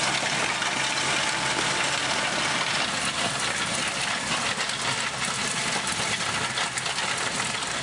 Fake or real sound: real